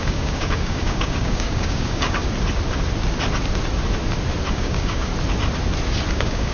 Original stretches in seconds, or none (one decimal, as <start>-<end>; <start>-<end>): 2.2-4.5; 5.1-6.1